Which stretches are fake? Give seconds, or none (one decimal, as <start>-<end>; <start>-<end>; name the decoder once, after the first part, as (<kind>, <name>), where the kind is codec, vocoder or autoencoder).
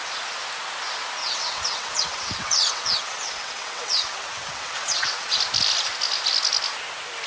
1.2-5.4 (vocoder, WaveNeXt)